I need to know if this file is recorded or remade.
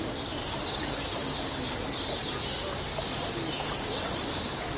recorded